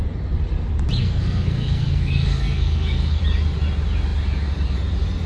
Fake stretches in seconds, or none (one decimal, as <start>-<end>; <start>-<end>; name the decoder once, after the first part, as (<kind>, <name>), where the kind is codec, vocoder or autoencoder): 1.0-3.2 (codec, SNAC)

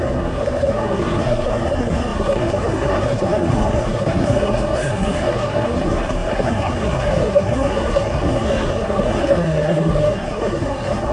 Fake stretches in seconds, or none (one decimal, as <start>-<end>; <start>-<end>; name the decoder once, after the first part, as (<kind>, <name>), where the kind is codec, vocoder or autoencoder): 0.0-11.1 (codec, SNAC)

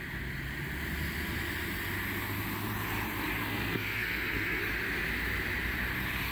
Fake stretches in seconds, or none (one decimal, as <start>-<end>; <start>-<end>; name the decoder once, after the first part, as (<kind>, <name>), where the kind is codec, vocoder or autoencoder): 3.4-4.6 (codec, SNAC)

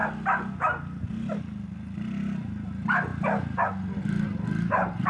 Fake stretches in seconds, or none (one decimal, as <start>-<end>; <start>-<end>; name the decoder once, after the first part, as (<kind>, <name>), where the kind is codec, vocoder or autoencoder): none